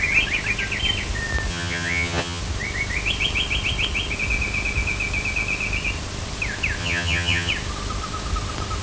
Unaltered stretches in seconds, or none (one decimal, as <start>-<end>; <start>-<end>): 0.0-1.5; 2.4-6.8; 7.5-8.8